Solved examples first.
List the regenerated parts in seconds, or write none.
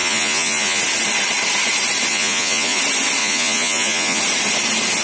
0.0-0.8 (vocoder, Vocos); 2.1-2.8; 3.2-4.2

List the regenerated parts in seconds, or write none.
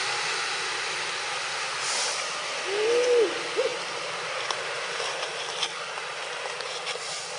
none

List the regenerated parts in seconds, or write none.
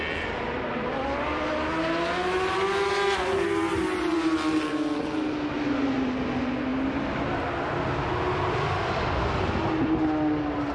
none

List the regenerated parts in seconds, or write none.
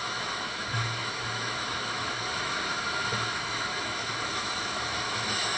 0.0-5.6 (autoencoder, DAC-VAE)